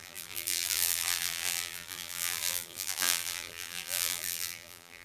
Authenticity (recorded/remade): remade